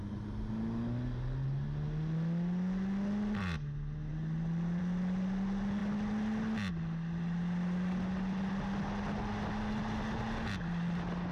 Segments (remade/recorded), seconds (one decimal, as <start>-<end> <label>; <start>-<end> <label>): 0.0-11.3 recorded